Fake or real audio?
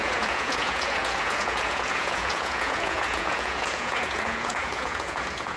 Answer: fake